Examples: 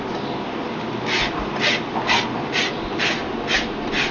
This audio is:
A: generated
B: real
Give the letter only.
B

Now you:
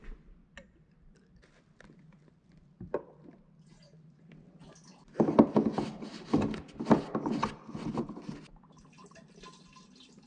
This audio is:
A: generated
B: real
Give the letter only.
B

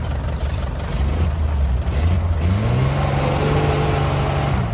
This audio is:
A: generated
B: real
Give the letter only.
B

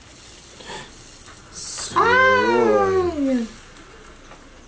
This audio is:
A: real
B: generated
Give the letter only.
A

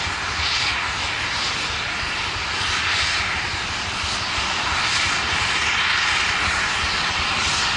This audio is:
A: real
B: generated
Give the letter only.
A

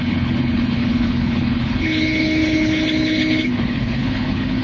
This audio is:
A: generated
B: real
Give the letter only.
A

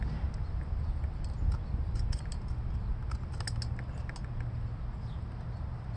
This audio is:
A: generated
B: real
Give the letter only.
B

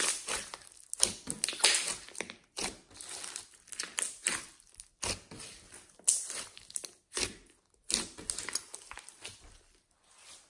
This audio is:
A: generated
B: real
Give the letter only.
B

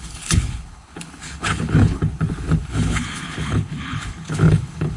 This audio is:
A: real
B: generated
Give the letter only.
B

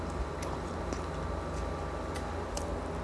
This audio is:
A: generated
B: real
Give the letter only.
B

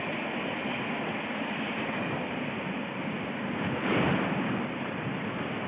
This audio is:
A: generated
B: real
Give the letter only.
B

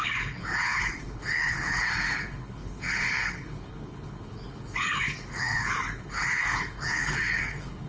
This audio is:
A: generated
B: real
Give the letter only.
A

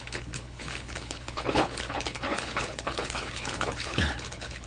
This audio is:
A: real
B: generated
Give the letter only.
B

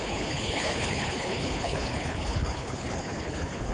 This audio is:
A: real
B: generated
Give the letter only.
B